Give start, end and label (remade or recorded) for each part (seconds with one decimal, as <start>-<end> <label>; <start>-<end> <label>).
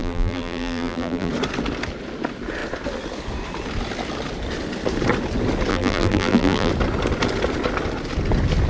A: 0.0-1.3 remade; 1.3-5.7 recorded; 5.7-6.7 remade; 6.7-8.7 recorded